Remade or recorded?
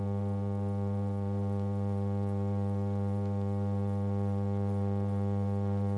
remade